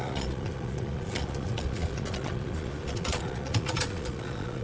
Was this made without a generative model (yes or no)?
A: no